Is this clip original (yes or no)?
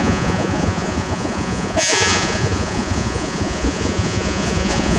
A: no